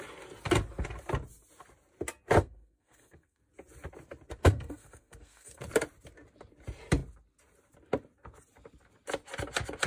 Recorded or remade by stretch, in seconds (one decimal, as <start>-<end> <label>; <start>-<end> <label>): 0.0-2.4 recorded; 2.4-3.4 remade; 3.4-4.4 recorded; 4.4-5.6 remade; 5.6-9.9 recorded